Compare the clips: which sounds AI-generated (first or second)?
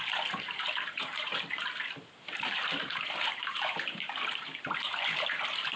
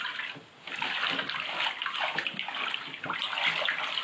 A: first